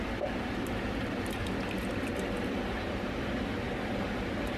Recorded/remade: recorded